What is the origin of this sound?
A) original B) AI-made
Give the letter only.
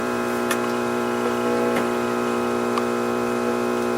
B